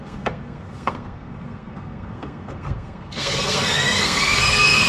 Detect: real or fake fake